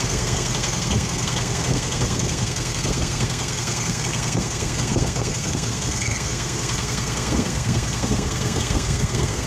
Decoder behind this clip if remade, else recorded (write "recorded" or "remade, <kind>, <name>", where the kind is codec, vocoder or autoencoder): remade, codec, SNAC